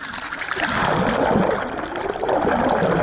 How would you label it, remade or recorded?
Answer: recorded